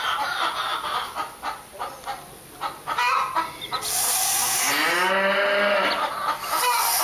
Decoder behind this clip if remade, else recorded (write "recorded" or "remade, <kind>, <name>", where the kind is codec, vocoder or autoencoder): recorded